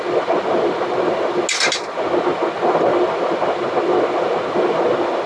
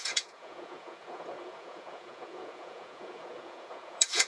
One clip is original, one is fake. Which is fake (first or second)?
second